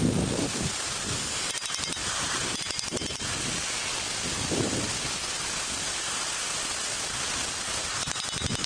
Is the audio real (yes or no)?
yes